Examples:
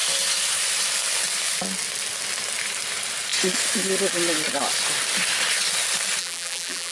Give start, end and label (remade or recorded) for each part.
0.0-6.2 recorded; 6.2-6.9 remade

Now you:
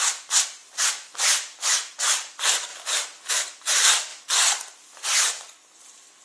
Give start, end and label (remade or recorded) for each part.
0.0-0.6 remade; 0.6-2.1 recorded; 2.1-2.7 remade; 2.7-3.3 recorded; 3.3-4.1 remade; 4.1-5.2 recorded; 5.2-6.2 remade

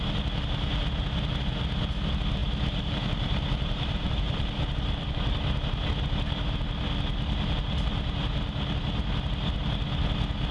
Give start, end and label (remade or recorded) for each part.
0.0-2.4 recorded; 2.4-5.3 remade; 5.3-10.5 recorded

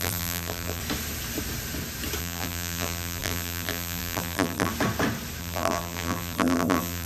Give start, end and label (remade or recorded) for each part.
0.0-0.8 remade; 0.8-2.2 recorded; 2.2-4.7 remade; 4.7-5.4 recorded; 5.4-7.1 remade